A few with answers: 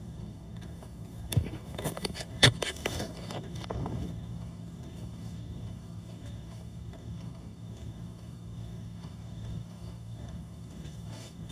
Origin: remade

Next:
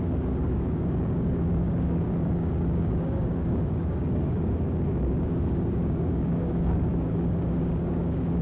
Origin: remade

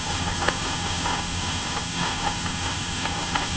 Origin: remade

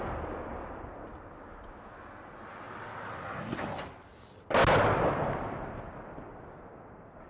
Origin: recorded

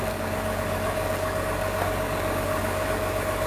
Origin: remade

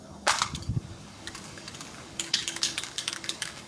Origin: remade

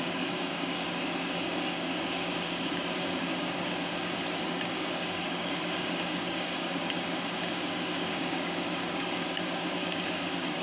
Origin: remade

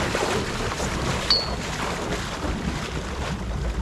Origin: recorded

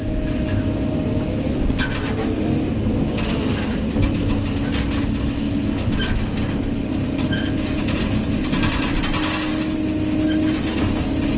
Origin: recorded